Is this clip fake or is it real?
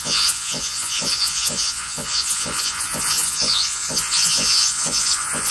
fake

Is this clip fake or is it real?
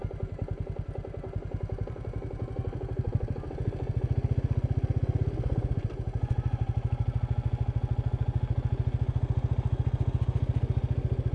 real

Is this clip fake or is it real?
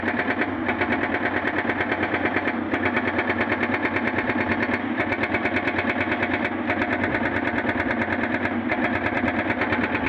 real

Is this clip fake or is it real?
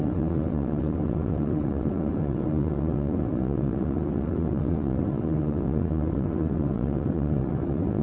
fake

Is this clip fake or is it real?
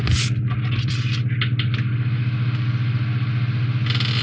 real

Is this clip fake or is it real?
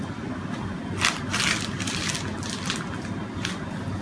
real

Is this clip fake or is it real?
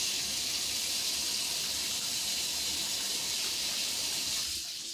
fake